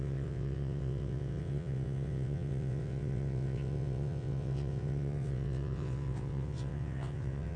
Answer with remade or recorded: remade